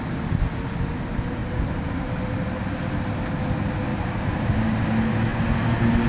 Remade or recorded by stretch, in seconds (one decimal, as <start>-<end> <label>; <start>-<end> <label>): 0.0-1.4 recorded; 1.4-2.0 remade; 2.0-3.9 recorded; 3.9-4.4 remade; 4.4-6.1 recorded